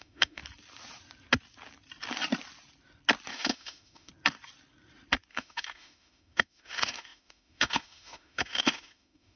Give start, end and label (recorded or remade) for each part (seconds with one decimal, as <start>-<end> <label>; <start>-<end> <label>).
0.0-0.4 remade; 0.4-3.3 recorded; 3.3-4.1 remade; 4.1-5.3 recorded; 5.3-9.4 remade